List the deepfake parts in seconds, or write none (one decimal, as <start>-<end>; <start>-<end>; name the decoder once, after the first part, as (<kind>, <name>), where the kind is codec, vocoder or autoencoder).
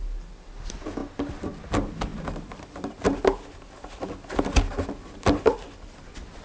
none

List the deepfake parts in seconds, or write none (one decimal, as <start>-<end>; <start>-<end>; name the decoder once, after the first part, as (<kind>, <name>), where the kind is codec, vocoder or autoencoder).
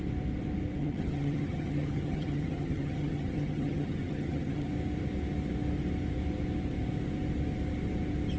0.8-4.7 (vocoder, HiFi-GAN)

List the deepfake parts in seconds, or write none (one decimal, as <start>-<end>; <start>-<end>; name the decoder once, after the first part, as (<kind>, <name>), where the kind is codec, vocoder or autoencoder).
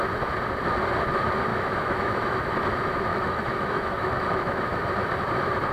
1.5-2.5 (autoencoder, DAC-VAE); 3.1-4.9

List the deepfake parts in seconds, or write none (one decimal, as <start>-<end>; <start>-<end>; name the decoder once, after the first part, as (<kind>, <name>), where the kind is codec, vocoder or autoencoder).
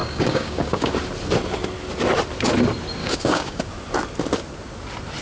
0.0-0.9 (codec, DAC); 3.0-3.6